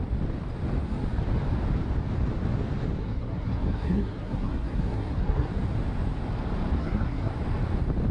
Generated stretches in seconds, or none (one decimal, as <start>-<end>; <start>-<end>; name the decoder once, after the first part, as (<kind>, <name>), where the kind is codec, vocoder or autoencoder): 3.0-5.5 (codec, SNAC); 6.8-7.3